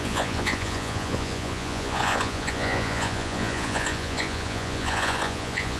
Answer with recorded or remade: remade